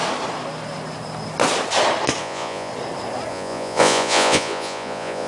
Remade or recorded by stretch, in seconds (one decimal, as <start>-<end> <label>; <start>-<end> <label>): 0.0-2.2 recorded; 2.2-2.7 remade; 2.7-3.3 recorded; 3.3-5.3 remade

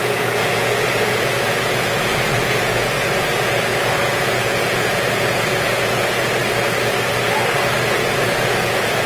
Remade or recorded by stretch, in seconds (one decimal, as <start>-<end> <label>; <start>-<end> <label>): 0.0-6.4 remade; 6.4-8.0 recorded; 8.0-9.1 remade